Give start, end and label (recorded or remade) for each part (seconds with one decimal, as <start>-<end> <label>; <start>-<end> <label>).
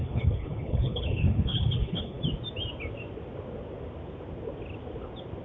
0.0-2.2 remade; 2.2-5.4 recorded